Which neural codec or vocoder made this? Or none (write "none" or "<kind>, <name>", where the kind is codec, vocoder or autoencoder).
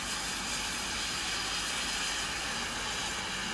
vocoder, BigVGAN v2